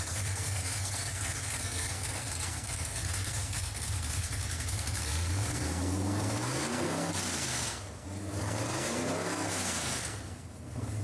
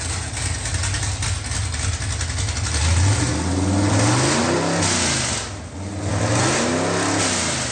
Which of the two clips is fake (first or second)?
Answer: first